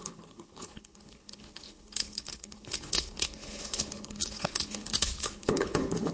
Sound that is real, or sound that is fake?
fake